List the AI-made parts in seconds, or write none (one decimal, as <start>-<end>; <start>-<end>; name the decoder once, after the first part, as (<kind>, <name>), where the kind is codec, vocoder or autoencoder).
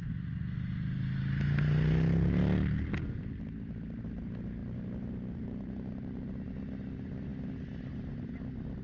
4.6-6.5 (vocoder, BigVGAN v2)